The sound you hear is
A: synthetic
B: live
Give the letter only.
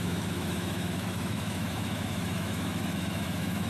A